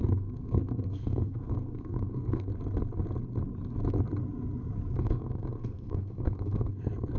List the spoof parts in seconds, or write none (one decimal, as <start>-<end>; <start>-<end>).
0.0-2.5; 5.0-7.2